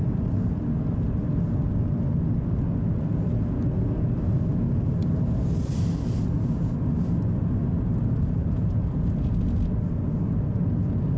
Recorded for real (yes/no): yes